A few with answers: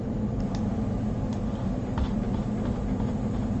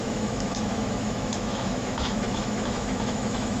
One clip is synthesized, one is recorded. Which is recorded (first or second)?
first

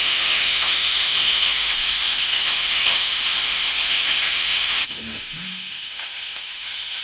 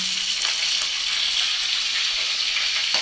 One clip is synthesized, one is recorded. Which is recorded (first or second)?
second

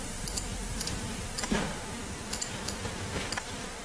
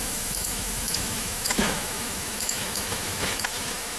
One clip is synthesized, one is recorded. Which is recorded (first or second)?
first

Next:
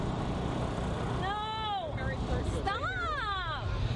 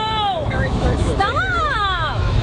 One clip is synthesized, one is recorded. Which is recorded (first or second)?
first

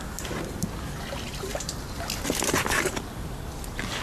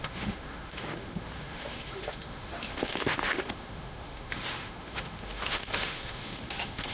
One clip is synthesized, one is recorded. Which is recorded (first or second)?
first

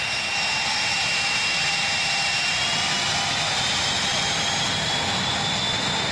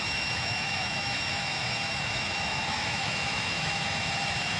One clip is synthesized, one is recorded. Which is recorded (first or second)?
first